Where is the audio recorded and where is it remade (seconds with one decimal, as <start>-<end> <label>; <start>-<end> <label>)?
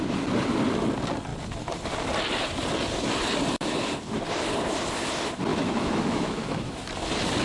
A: 0.0-5.5 recorded; 5.5-6.9 remade; 6.9-7.4 recorded